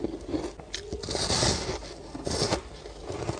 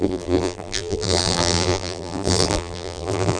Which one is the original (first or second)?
first